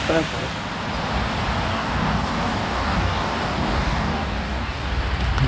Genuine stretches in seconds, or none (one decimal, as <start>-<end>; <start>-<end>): 0.0-1.7; 5.0-5.5